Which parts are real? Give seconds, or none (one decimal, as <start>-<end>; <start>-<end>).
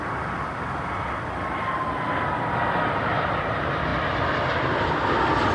0.0-5.5